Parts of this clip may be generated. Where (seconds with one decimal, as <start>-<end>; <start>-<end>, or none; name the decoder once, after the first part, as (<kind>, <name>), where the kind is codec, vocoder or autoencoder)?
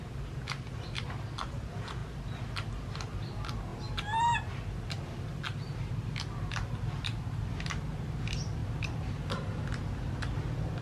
none